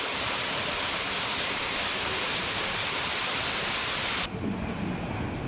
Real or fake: real